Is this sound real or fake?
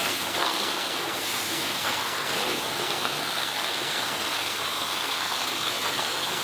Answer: fake